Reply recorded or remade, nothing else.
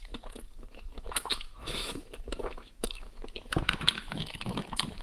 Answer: remade